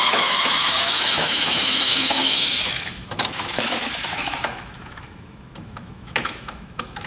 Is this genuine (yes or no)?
no